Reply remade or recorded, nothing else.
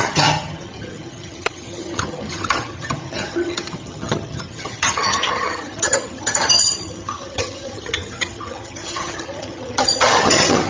remade